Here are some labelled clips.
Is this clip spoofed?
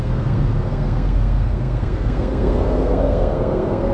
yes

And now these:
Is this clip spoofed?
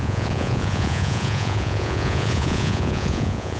yes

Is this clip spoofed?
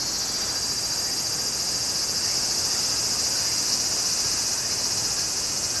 no